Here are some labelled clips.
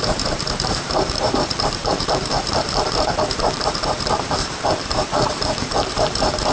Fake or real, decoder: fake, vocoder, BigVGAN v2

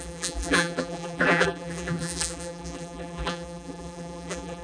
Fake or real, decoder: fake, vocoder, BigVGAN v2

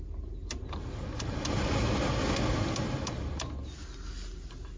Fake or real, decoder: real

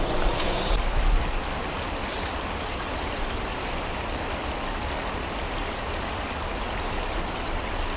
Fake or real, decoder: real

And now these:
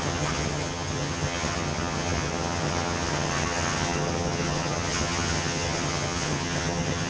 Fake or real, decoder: fake, vocoder, HiFi-GAN